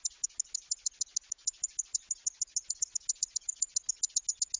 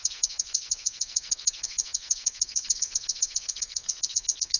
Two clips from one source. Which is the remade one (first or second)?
second